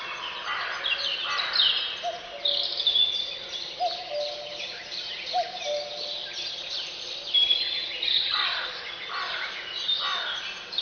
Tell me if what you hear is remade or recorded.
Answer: recorded